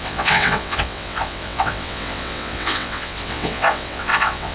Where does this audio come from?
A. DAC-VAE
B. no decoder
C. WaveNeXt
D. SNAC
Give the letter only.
C